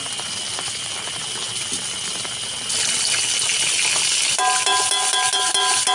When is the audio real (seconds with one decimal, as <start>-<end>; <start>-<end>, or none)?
0.0-5.9